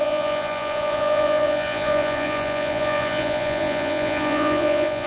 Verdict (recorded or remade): remade